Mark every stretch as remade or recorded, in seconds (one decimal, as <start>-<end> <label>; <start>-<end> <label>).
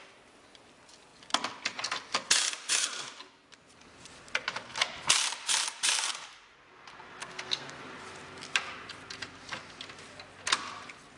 0.0-7.2 recorded; 7.2-7.8 remade; 7.8-11.2 recorded